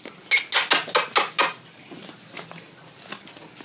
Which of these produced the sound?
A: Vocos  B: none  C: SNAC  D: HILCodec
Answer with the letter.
B